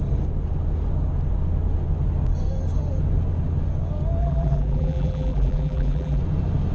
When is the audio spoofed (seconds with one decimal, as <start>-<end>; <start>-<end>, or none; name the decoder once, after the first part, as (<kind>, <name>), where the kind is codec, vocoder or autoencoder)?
4.2-6.2 (vocoder, BigVGAN v2)